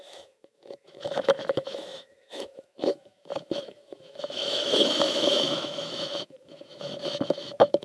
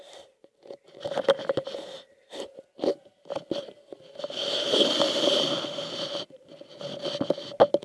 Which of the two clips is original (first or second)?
second